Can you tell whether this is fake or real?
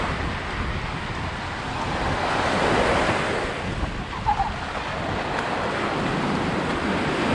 real